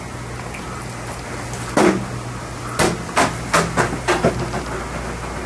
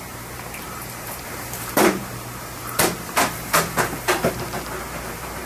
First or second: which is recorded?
first